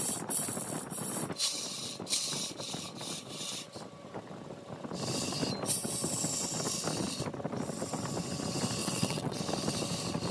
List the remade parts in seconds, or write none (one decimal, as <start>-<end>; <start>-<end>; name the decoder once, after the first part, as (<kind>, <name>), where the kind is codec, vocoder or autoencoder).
8.8-9.4 (vocoder, WaveNeXt)